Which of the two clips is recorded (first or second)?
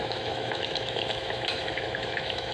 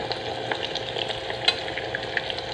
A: second